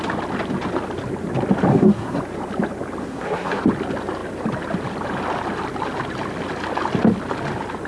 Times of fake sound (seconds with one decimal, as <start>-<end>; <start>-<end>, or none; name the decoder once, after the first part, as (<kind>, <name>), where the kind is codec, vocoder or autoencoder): 1.7-2.2 (codec, SNAC); 3.0-3.6